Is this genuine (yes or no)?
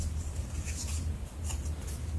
yes